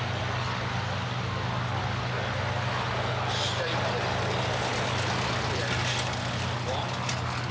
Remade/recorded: recorded